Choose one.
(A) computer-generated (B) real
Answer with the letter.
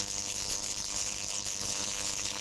A